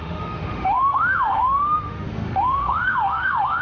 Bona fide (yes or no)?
no